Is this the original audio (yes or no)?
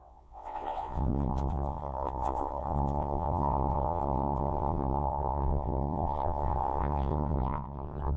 no